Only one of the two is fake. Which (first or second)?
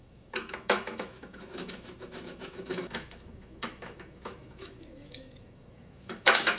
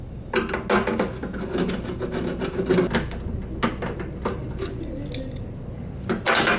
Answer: first